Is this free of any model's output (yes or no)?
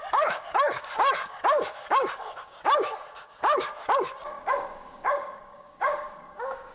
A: no